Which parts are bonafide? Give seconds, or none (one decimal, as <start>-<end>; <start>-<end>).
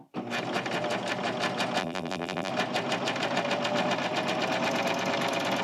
0.0-1.8; 2.5-5.6